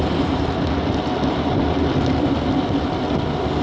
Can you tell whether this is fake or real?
real